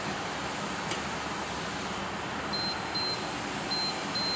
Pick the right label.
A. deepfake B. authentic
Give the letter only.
B